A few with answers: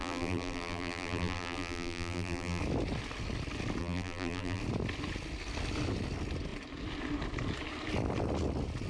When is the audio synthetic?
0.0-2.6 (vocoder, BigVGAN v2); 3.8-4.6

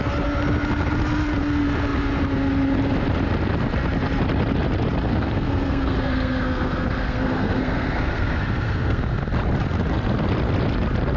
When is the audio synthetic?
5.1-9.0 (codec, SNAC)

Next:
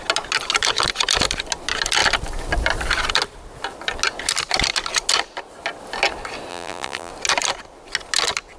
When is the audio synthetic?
6.5-7.1 (vocoder, BigVGAN v2)

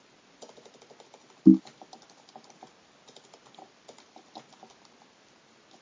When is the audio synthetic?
none

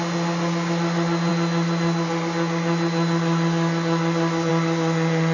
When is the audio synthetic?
none